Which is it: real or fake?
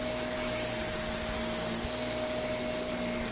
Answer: real